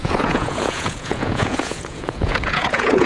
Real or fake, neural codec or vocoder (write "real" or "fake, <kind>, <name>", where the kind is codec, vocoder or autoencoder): fake, vocoder, Vocos